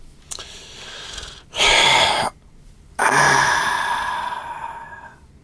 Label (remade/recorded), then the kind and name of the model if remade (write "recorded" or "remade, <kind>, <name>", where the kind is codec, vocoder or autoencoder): recorded